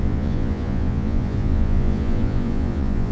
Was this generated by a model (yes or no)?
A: yes